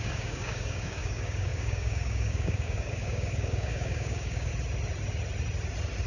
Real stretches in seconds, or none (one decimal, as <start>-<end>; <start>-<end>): 4.5-6.1